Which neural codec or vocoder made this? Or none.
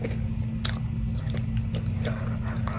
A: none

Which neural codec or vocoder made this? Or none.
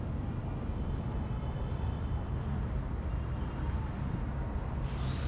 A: none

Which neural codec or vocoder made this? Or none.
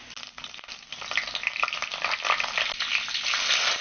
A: none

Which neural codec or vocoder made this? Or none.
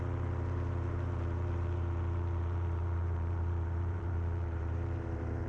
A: vocoder, BigVGAN v2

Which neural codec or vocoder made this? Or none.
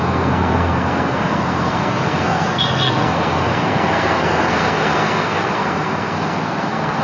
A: codec, SNAC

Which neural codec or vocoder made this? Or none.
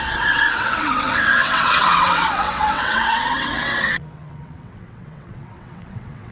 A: vocoder, WaveNeXt